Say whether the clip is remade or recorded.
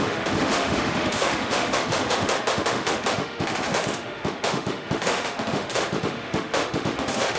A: remade